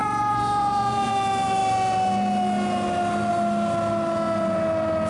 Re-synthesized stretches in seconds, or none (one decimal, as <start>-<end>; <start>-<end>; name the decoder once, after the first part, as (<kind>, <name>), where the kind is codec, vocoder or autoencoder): 0.0-1.1 (vocoder, Vocos)